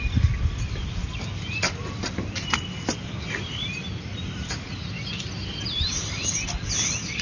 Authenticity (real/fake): real